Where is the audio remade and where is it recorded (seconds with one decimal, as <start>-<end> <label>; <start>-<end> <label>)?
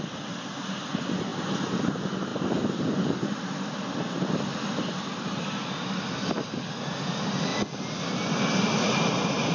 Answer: 0.0-9.5 recorded